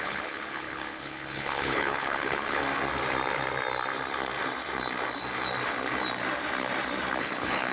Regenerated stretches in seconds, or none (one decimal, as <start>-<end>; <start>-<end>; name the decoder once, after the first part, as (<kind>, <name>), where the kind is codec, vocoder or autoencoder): 0.0-2.6 (codec, HILCodec); 7.2-7.7